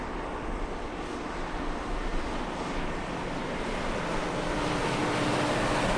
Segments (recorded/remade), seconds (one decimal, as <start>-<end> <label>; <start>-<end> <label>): 0.0-6.0 recorded